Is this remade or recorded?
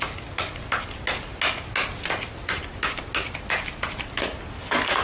recorded